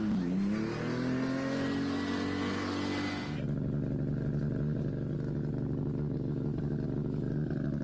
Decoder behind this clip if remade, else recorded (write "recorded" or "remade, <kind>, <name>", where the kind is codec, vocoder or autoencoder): recorded